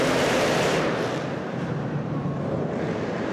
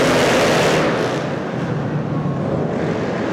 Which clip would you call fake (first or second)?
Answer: first